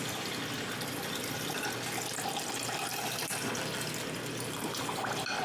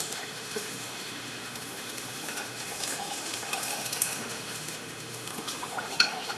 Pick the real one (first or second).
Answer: first